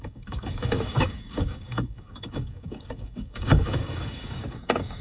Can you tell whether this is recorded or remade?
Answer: remade